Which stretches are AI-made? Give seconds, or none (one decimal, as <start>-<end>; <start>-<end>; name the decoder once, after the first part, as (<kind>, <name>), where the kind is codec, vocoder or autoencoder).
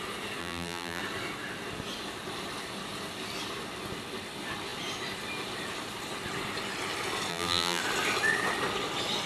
0.4-1.0 (vocoder, BigVGAN v2); 7.3-7.8